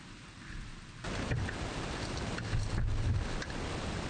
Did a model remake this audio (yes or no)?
no